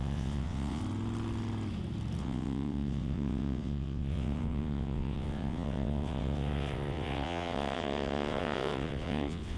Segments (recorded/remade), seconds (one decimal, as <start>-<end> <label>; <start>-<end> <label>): 0.0-0.8 remade; 0.8-2.2 recorded; 2.2-9.6 remade